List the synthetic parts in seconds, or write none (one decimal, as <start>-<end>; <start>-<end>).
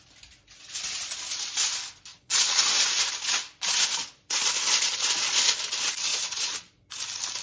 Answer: 2.1-2.6; 6.1-6.7